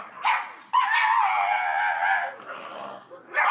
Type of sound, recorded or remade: recorded